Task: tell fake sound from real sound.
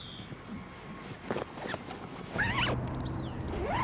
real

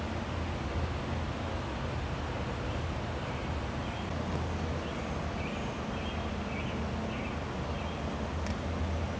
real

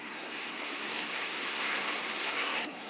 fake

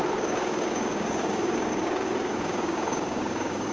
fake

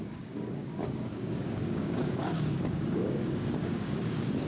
fake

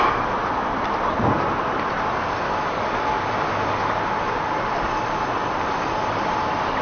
real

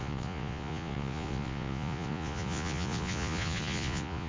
fake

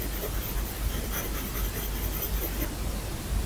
real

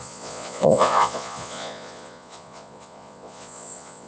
fake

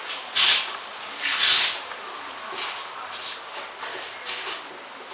real